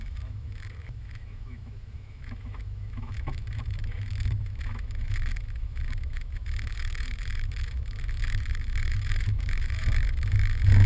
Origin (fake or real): fake